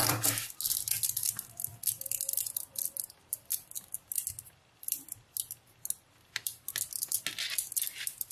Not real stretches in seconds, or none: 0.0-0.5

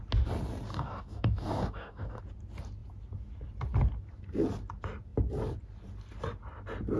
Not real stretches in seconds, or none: 0.7-2.2

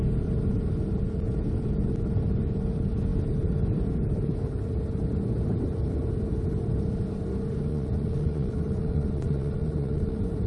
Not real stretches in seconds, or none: 7.7-10.5

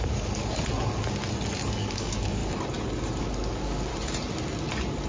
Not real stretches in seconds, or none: 0.0-0.4; 1.8-2.4; 3.2-3.9

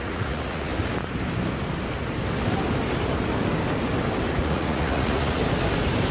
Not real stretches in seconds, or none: 0.0-0.7; 4.4-5.4

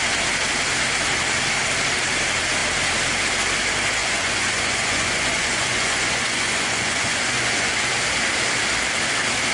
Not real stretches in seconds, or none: 4.0-7.9

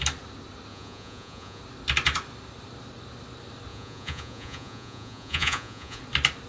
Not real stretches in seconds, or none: 0.7-1.6; 3.7-6.0